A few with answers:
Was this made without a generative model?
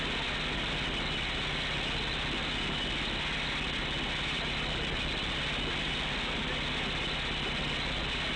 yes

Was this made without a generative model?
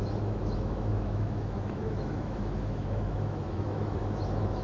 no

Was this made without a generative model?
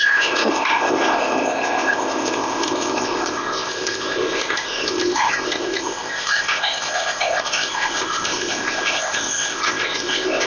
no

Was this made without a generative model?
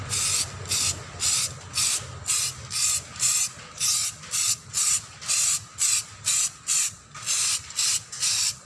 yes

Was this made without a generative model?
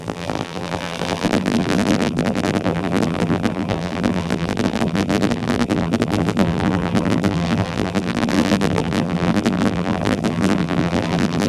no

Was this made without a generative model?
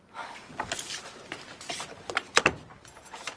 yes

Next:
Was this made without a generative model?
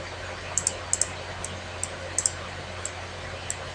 yes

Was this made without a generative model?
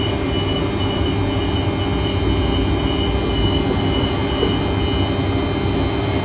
yes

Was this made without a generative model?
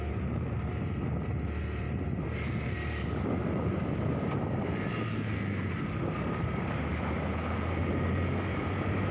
yes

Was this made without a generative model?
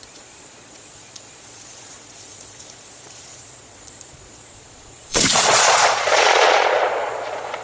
no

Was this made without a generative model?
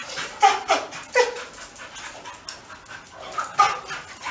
yes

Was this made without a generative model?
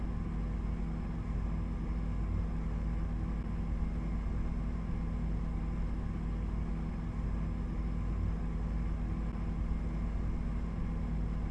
yes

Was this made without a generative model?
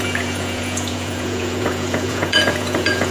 no